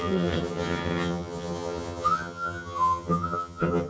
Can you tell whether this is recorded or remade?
remade